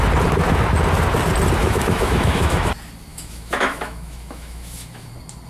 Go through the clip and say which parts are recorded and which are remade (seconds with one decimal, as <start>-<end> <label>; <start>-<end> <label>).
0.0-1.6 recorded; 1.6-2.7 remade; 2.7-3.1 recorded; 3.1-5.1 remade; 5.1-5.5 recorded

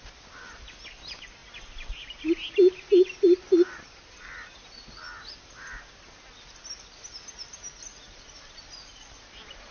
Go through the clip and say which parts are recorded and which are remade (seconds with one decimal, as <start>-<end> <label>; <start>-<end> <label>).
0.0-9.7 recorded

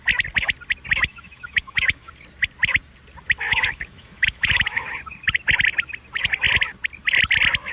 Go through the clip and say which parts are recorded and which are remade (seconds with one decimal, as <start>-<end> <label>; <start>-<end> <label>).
0.0-1.1 recorded; 1.1-2.1 remade; 2.1-3.5 recorded; 3.5-4.9 remade; 4.9-7.7 recorded

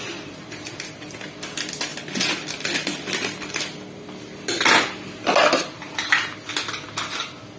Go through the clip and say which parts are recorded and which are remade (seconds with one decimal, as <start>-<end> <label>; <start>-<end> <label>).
0.0-7.6 recorded

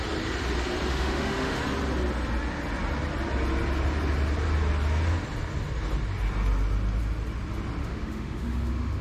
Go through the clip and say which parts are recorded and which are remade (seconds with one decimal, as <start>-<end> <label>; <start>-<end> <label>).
0.0-0.9 recorded; 0.9-1.6 remade; 1.6-7.8 recorded; 7.8-9.0 remade

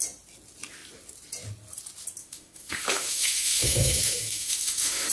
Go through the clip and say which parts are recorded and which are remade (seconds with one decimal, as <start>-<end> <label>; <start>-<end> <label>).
0.0-2.2 recorded; 2.2-5.1 remade